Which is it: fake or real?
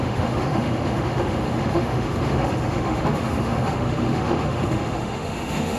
fake